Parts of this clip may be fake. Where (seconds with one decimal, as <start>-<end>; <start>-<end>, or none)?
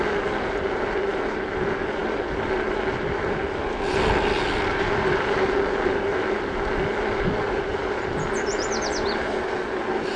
none